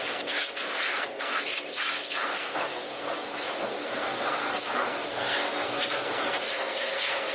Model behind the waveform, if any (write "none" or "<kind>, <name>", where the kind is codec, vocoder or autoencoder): codec, SNAC